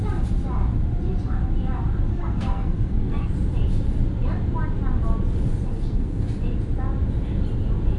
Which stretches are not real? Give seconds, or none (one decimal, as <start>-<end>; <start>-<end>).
2.1-3.3; 5.7-6.2